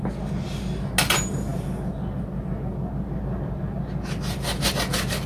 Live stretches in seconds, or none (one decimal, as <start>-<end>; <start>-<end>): 0.0-5.3